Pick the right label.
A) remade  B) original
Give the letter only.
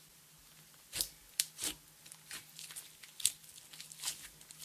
B